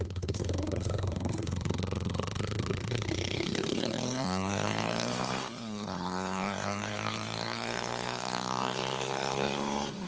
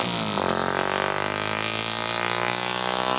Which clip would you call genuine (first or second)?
second